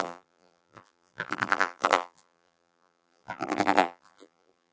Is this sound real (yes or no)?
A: no